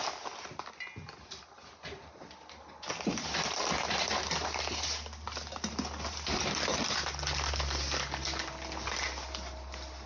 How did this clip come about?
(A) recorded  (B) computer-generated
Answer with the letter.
A